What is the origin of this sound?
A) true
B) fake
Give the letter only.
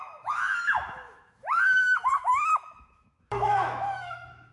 B